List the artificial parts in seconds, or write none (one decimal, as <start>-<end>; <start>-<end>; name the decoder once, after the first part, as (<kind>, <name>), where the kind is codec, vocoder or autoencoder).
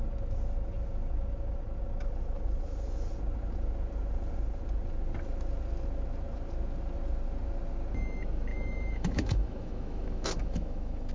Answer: 8.5-11.1 (autoencoder, DAC-VAE)